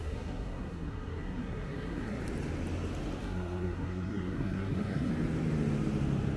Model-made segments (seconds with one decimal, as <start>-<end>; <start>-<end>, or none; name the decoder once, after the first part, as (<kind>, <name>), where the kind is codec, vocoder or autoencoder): 0.0-2.2 (codec, SNAC); 3.2-5.1